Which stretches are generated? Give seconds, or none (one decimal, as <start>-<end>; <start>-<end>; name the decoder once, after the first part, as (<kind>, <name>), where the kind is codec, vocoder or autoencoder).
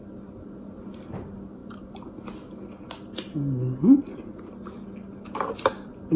none